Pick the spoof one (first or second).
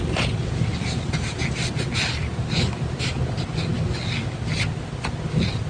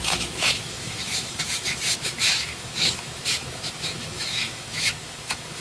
second